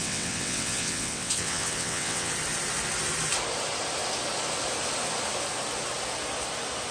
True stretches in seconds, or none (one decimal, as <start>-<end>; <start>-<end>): 2.3-6.9